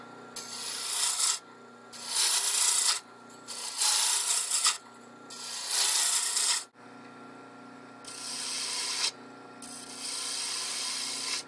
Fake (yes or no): no